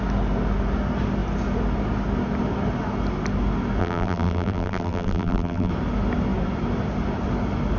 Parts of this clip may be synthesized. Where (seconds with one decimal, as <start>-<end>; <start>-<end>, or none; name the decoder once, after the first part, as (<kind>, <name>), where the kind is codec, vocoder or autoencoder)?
3.8-5.7 (vocoder, BigVGAN v2)